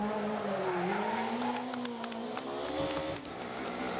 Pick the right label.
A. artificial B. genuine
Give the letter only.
B